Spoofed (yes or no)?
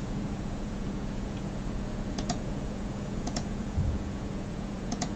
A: yes